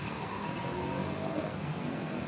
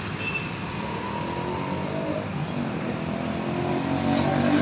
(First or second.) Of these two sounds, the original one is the second